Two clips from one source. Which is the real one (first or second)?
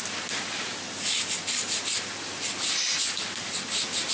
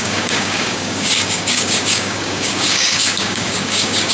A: first